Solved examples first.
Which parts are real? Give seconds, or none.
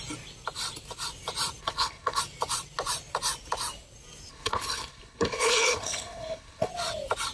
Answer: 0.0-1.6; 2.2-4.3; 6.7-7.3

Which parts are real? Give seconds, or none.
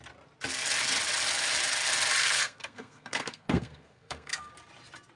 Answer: 0.0-2.2; 4.5-5.2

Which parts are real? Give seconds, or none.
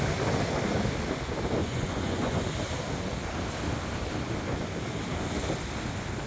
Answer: 0.0-1.6; 2.4-6.3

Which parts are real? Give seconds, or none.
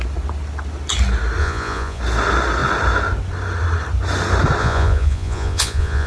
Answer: 0.0-1.4; 2.0-4.6